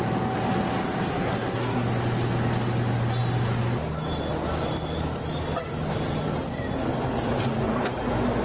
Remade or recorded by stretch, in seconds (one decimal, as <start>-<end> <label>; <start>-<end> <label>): 0.0-1.1 recorded; 1.1-1.9 remade; 1.9-8.4 recorded